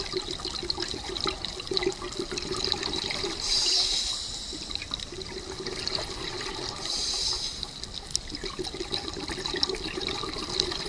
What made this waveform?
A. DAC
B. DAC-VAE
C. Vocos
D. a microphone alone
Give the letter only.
D